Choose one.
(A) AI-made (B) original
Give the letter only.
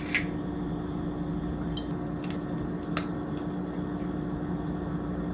B